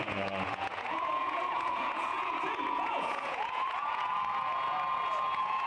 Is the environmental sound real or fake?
fake